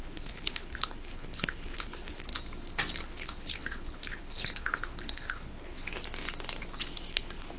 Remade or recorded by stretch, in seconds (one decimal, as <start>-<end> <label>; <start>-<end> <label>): 0.0-2.3 remade; 2.3-3.0 recorded; 3.0-5.9 remade; 5.9-7.1 recorded; 7.1-7.6 remade